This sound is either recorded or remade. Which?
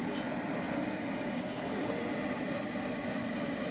recorded